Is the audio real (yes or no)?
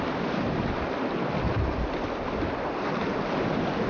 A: yes